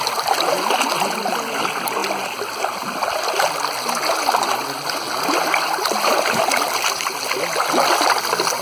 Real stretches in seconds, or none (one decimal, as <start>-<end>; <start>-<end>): 0.0-8.6